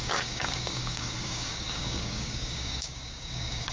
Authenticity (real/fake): fake